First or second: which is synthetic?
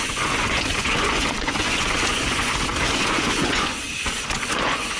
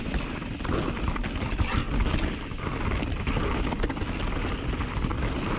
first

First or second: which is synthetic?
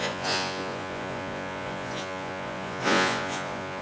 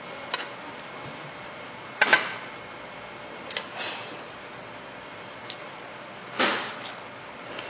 first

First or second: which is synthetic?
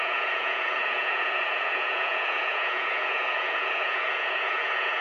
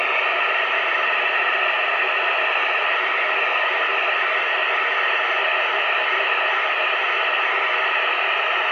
first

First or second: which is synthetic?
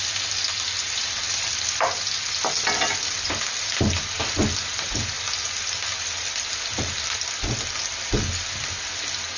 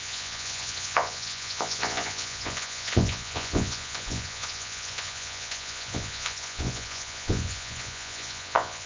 second